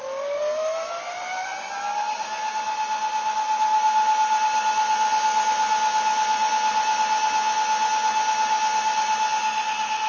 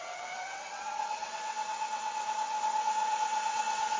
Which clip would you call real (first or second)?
first